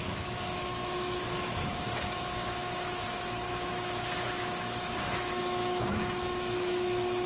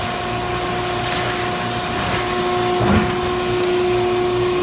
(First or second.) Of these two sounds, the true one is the second